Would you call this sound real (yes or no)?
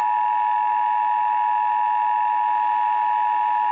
no